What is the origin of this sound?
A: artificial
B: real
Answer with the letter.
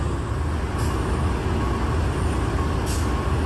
B